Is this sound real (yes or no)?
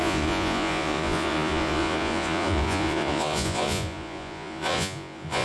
no